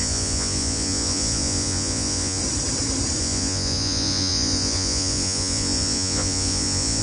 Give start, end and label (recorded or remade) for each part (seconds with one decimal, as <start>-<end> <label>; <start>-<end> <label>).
0.0-2.4 remade; 2.4-3.2 recorded; 3.2-7.0 remade